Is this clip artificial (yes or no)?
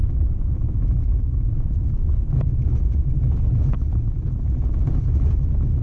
yes